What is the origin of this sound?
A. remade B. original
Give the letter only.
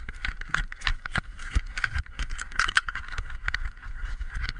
A